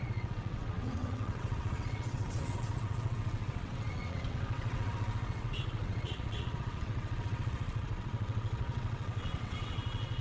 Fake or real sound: fake